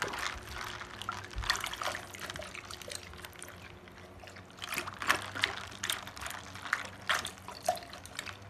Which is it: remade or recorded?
recorded